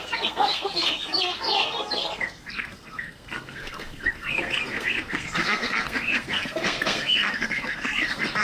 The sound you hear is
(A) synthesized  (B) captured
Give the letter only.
A